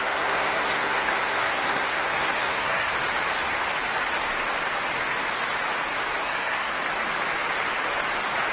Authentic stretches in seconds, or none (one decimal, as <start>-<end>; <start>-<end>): 2.9-6.2; 6.8-8.5